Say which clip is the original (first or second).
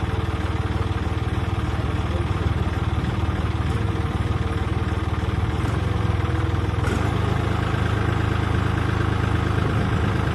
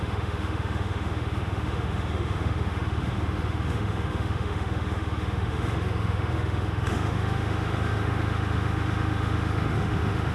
first